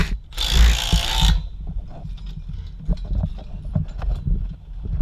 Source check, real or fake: real